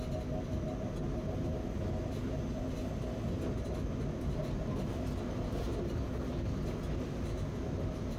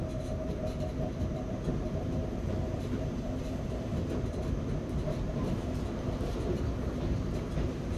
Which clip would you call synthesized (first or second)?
second